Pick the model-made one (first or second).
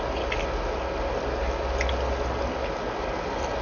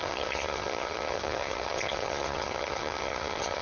second